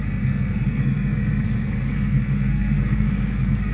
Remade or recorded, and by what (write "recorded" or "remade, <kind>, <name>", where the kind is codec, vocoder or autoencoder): remade, codec, SNAC